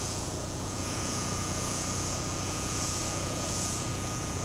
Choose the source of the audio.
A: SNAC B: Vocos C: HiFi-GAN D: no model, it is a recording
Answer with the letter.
B